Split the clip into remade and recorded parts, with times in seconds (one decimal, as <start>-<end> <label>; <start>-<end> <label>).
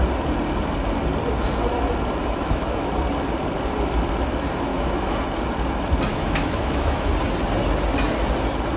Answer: 0.0-2.2 recorded; 2.2-2.9 remade; 2.9-4.7 recorded; 4.7-5.2 remade; 5.2-6.1 recorded; 6.1-7.1 remade; 7.1-8.8 recorded